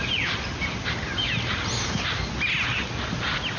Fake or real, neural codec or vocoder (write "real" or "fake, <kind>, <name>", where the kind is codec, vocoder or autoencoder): real